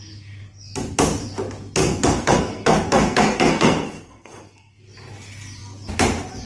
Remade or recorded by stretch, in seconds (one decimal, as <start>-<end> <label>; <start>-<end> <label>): 0.0-1.8 recorded; 1.8-4.8 remade; 4.8-6.5 recorded